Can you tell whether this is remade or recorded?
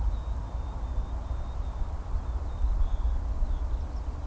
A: recorded